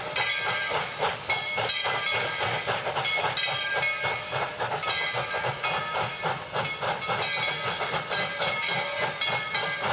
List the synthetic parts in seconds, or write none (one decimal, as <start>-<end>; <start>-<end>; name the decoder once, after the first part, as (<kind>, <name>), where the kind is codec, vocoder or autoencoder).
none